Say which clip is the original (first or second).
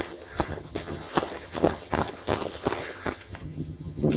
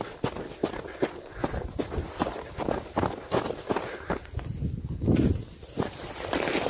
second